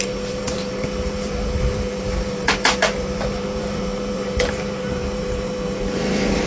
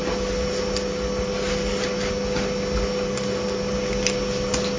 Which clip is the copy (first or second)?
first